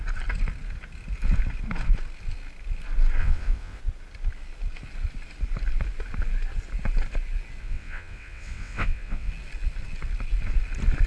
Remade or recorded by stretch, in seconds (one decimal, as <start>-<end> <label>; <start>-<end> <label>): 0.0-3.2 recorded; 3.2-3.8 remade; 3.8-7.6 recorded; 7.6-9.3 remade; 9.3-11.1 recorded